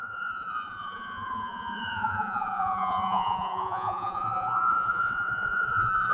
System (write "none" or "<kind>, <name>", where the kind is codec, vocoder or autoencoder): vocoder, Vocos